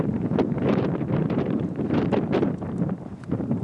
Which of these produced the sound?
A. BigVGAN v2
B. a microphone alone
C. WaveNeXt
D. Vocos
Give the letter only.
A